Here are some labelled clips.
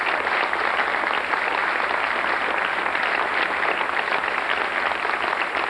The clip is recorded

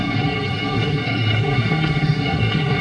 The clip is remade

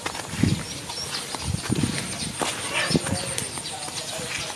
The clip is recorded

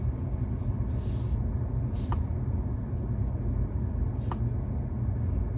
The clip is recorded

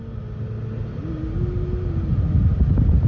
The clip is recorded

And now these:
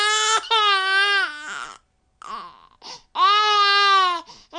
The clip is recorded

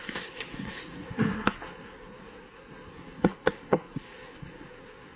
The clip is remade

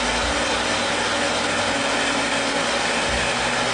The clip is recorded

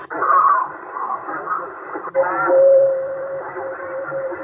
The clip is remade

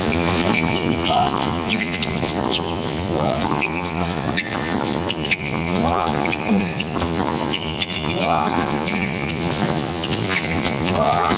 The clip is remade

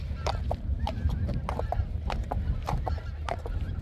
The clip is recorded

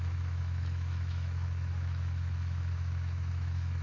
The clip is remade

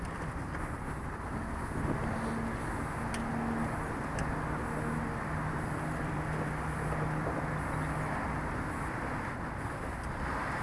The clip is recorded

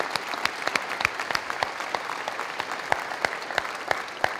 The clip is recorded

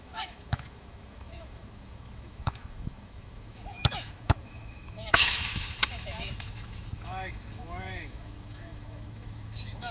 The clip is remade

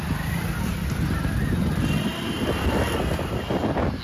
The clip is recorded